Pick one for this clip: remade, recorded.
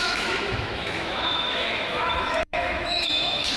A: remade